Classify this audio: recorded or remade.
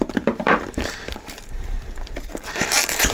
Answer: remade